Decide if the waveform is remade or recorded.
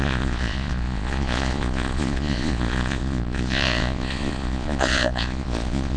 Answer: remade